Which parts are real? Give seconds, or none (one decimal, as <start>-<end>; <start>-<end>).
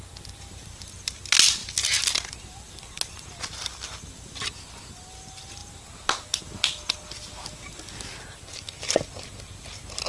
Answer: 0.0-10.1